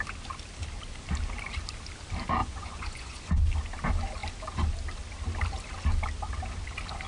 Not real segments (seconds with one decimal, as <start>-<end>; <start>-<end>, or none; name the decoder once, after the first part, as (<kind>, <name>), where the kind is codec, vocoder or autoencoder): 2.4-3.3 (vocoder, Vocos)